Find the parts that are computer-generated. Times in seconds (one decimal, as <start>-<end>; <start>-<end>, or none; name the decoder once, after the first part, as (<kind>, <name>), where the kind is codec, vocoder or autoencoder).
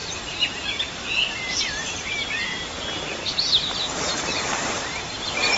0.0-5.6 (vocoder, BigVGAN v2)